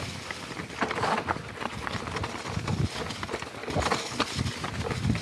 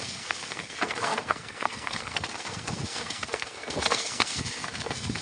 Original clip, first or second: first